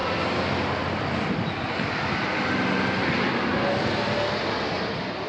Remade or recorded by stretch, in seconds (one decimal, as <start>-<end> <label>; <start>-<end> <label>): 0.0-5.3 recorded